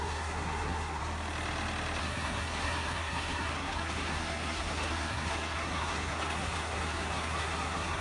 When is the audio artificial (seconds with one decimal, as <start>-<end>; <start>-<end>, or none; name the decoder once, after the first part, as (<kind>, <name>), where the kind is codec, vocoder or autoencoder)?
0.0-1.0 (codec, SNAC); 2.0-8.0